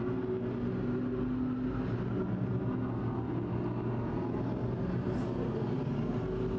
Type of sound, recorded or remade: recorded